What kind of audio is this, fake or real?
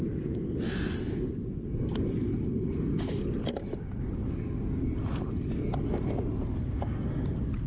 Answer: real